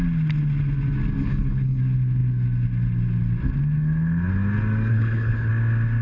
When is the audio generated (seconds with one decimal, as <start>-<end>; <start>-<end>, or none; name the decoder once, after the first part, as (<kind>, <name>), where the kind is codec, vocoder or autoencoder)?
1.2-1.8 (codec, HILCodec); 4.9-5.5